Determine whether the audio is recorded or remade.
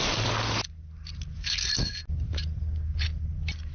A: recorded